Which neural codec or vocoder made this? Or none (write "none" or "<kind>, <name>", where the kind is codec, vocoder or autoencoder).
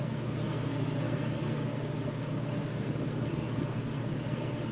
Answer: codec, SNAC